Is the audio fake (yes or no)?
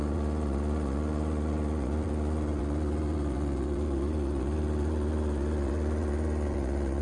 yes